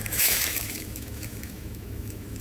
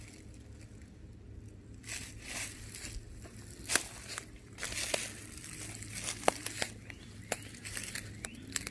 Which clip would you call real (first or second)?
second